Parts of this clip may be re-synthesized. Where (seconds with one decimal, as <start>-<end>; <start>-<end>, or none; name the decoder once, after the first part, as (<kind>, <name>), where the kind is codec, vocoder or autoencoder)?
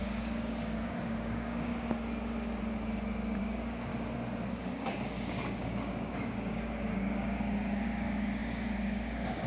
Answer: 0.0-1.7 (codec, DAC); 3.4-3.9; 4.5-9.5